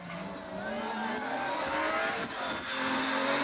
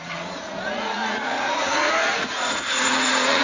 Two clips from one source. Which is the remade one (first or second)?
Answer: second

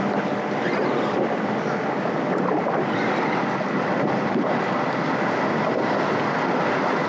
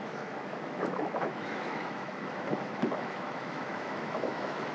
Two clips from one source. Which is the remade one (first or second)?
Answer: second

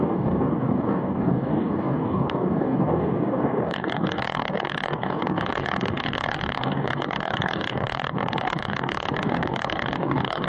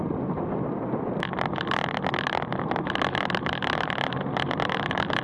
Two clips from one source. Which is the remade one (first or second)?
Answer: first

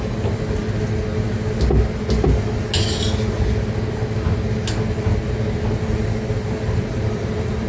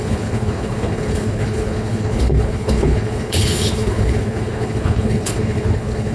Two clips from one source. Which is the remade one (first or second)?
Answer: second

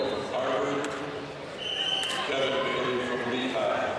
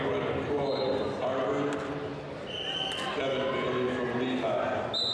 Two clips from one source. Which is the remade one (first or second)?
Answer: first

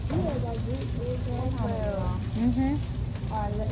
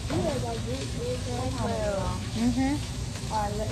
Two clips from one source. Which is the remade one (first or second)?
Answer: second